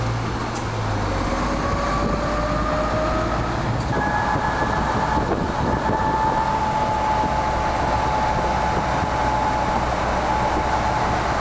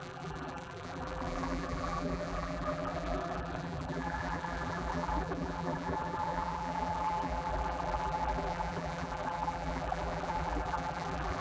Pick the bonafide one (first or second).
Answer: first